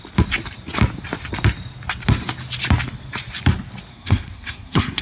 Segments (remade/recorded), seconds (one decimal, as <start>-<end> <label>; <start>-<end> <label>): 0.0-3.9 recorded; 3.9-5.0 remade